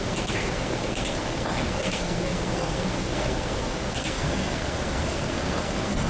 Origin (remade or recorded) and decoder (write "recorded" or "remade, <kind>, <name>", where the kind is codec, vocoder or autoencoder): remade, codec, SNAC